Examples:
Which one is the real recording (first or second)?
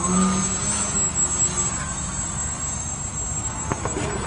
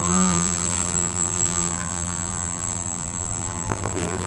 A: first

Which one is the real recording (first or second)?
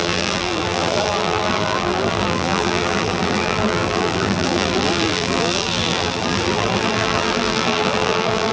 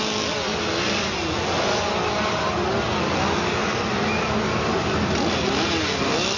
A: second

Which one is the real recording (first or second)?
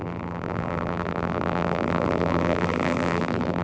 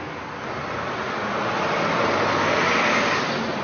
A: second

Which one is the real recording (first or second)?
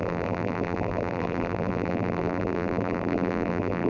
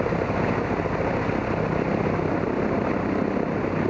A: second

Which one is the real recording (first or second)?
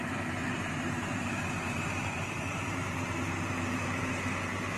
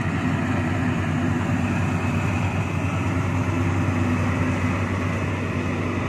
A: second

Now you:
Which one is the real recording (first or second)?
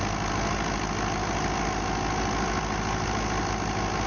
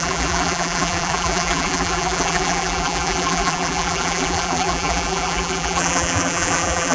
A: first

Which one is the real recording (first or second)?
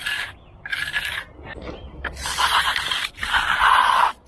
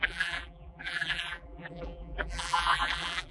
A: first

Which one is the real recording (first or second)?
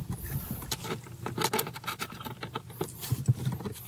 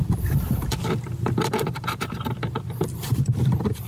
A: first